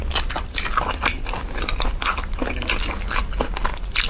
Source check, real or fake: real